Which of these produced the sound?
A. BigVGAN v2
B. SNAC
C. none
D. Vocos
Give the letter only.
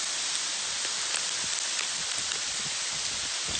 C